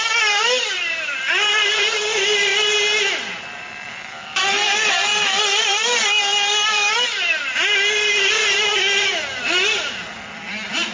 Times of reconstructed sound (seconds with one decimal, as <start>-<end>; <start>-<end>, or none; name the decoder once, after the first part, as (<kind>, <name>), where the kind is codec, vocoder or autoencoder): 0.0-2.5 (vocoder, BigVGAN v2); 3.1-10.9